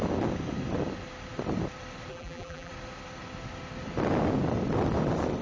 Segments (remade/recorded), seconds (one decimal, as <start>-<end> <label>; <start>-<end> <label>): 0.0-2.1 recorded; 2.1-2.7 remade; 2.7-5.4 recorded